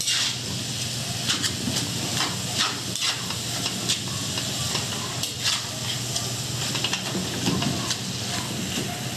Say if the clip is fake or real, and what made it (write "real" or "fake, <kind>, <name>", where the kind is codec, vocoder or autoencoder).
real